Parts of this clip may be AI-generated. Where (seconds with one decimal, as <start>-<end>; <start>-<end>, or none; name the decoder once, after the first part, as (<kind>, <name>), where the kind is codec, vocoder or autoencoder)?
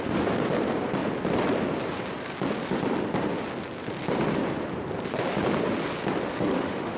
6.3-7.0 (autoencoder, DAC-VAE)